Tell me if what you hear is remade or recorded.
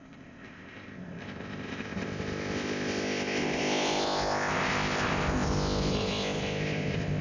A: remade